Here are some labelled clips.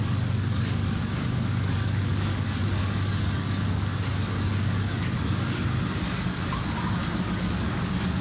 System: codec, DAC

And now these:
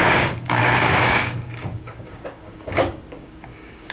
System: codec, DAC